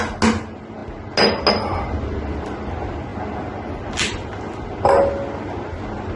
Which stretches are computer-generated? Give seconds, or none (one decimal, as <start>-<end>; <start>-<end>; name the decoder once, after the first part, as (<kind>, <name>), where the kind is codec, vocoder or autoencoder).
none